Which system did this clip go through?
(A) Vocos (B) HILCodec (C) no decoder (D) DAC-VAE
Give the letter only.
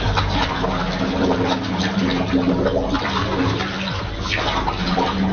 C